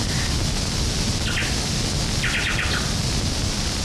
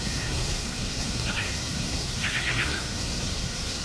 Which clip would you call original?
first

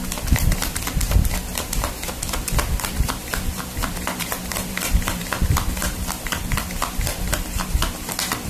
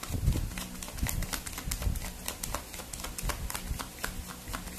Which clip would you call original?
second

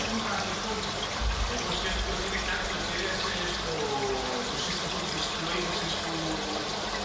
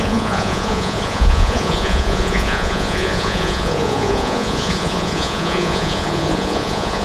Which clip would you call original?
first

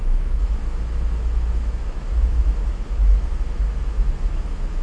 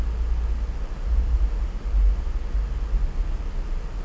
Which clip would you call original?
second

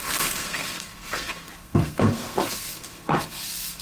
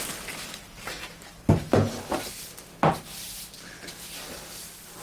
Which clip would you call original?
second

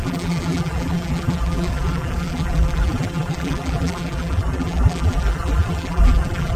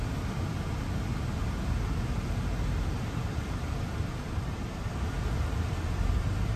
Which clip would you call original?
second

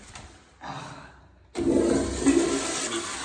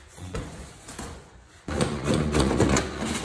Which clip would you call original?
first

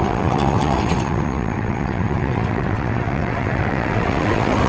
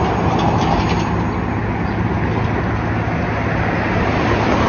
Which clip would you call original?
second